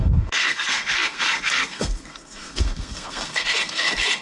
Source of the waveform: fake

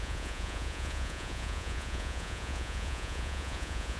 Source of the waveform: fake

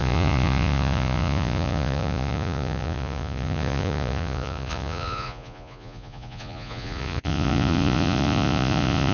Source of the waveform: fake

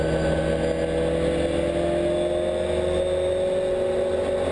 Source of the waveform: real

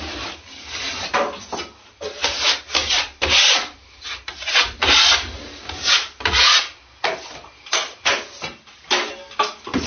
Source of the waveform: real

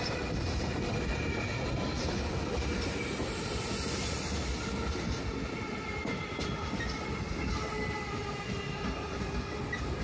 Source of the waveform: real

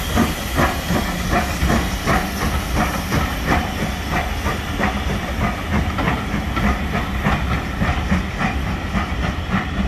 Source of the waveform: real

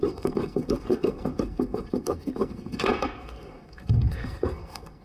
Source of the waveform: fake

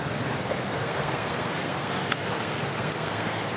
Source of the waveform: fake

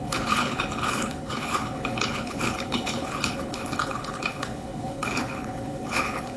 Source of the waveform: fake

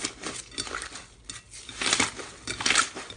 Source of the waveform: real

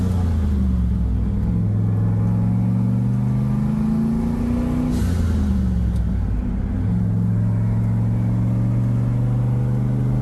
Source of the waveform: real